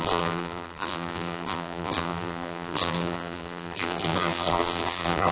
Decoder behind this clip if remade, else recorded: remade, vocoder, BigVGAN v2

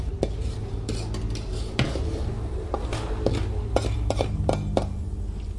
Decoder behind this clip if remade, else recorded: recorded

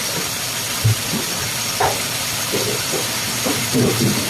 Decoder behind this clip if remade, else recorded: remade, vocoder, BigVGAN v2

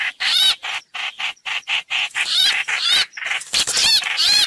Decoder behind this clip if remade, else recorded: remade, vocoder, BigVGAN v2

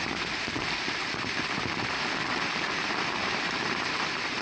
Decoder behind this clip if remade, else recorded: remade, vocoder, BigVGAN v2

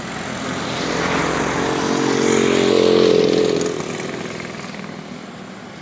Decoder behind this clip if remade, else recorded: recorded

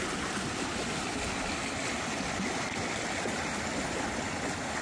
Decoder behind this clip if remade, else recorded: recorded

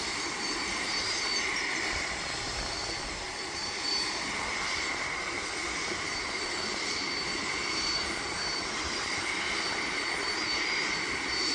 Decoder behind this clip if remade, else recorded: remade, vocoder, BigVGAN v2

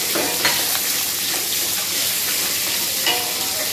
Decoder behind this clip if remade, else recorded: remade, vocoder, BigVGAN v2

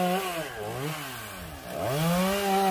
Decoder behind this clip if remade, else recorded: recorded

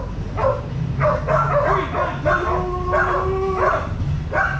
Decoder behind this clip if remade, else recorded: recorded